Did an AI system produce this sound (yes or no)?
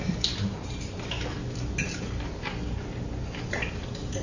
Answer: no